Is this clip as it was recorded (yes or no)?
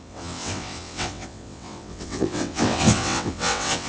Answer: no